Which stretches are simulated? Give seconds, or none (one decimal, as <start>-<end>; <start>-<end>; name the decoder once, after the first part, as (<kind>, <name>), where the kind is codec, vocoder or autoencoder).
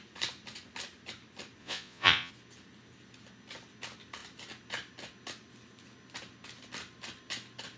1.6-2.3 (vocoder, Vocos)